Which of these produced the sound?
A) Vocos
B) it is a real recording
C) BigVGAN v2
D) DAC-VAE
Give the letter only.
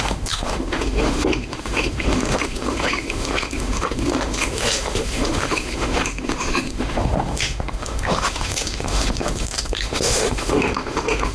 D